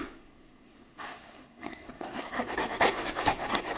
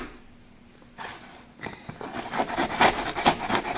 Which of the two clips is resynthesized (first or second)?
first